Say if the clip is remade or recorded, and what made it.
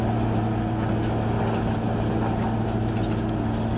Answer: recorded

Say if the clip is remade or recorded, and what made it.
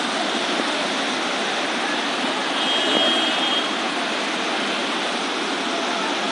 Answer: recorded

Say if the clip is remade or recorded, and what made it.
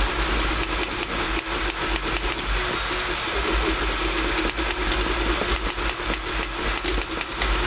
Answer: recorded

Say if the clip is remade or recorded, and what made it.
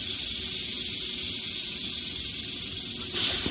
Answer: recorded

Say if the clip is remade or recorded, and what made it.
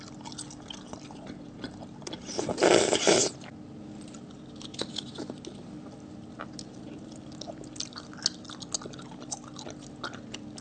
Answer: recorded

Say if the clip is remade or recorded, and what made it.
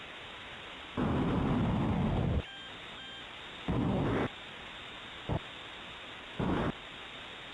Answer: recorded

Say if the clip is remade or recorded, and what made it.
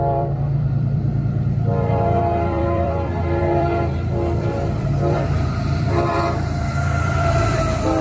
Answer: remade, vocoder, BigVGAN v2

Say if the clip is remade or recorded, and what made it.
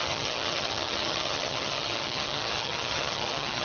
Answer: remade, vocoder, HiFi-GAN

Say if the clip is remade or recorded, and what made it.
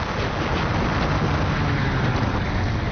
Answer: recorded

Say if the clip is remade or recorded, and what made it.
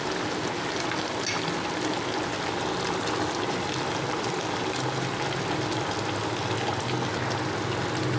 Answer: recorded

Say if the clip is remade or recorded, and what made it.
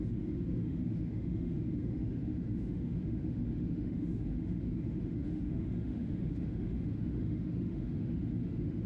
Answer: remade, autoencoder, DAC-VAE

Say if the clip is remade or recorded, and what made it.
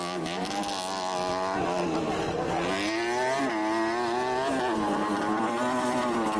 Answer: recorded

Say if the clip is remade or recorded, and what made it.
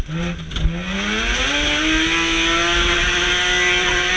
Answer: recorded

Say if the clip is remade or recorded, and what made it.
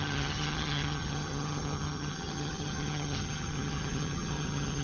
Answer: remade, vocoder, HiFi-GAN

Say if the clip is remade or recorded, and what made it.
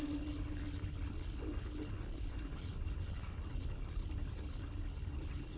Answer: remade, codec, HILCodec